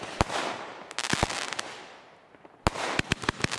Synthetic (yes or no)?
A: no